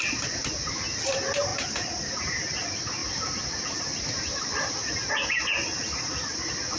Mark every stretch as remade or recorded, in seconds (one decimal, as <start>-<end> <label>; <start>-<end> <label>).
0.0-6.8 recorded